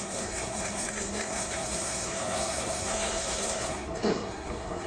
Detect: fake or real fake